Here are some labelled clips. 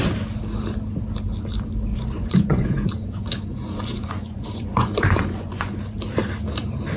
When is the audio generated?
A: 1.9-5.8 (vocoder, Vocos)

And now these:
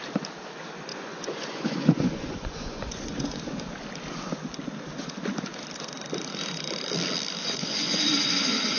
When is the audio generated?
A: 0.9-3.4 (vocoder, Vocos); 7.4-8.8

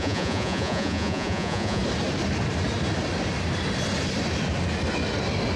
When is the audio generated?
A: 0.0-1.8 (vocoder, Vocos)

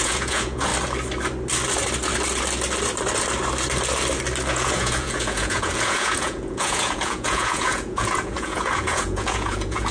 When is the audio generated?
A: 0.0-0.7 (vocoder, Vocos); 4.5-9.9

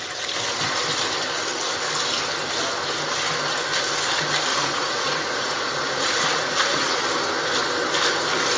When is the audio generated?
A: 4.5-6.9 (vocoder, Vocos)

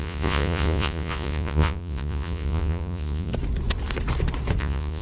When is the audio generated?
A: 0.0-3.3 (vocoder, Vocos); 4.6-5.0

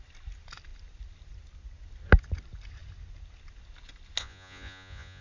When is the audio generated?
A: 4.2-5.2 (vocoder, Vocos)

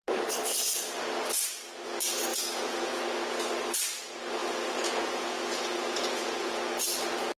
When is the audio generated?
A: 2.3-3.0 (vocoder, Vocos); 4.4-6.6